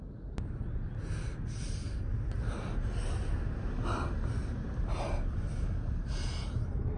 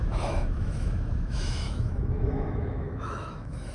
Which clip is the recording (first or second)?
first